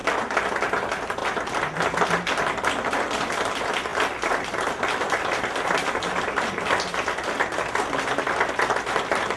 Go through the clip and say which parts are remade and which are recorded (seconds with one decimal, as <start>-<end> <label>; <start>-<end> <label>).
0.0-9.4 recorded